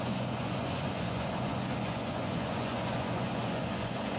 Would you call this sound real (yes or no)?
no